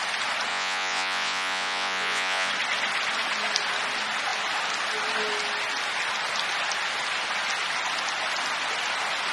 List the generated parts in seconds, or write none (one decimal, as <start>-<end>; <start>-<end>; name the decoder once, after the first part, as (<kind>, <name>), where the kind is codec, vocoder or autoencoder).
0.5-2.5 (vocoder, Vocos)